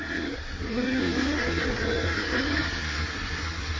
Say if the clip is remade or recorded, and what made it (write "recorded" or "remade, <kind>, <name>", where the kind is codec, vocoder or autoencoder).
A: remade, codec, SNAC